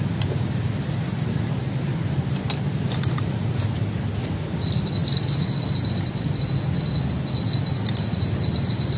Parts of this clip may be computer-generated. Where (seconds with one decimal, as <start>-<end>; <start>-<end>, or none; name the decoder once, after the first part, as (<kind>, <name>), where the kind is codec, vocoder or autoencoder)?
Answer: none